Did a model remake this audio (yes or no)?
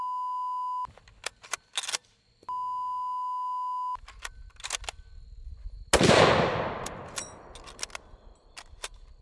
no